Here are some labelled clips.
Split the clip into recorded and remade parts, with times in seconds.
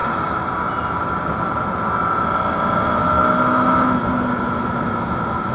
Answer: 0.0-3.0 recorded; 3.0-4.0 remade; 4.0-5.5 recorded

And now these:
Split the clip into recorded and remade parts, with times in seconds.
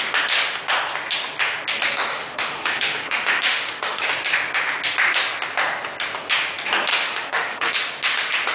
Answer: 0.0-2.1 recorded; 2.1-4.1 remade; 4.1-6.9 recorded; 6.9-7.7 remade; 7.7-8.5 recorded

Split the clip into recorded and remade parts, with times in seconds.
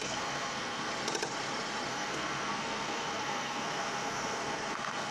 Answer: 0.0-0.9 remade; 0.9-1.9 recorded; 1.9-5.1 remade